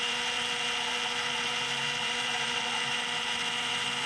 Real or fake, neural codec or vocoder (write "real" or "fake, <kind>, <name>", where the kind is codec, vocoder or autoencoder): fake, vocoder, BigVGAN v2